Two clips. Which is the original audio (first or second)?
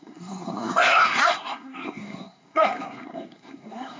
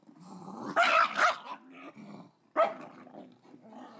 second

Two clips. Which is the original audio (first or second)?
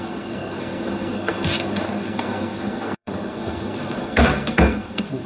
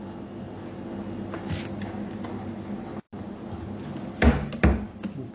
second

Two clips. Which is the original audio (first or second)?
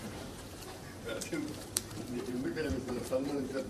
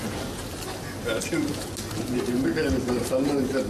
second